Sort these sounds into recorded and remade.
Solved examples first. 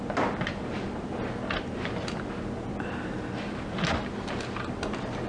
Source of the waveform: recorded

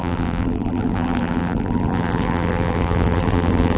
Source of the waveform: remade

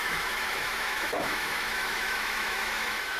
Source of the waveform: remade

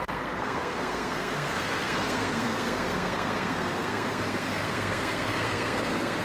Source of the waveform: remade